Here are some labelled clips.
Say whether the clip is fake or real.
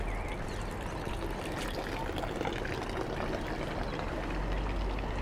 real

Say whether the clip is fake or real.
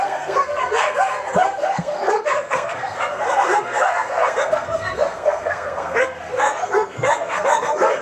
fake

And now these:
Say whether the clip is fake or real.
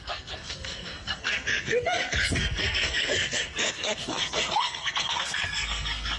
fake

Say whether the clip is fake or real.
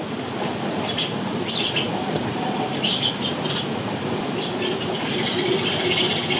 real